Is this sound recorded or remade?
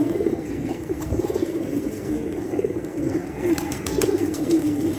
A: remade